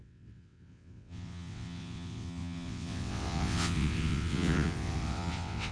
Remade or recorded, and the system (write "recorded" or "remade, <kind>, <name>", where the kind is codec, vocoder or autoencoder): remade, vocoder, WaveNeXt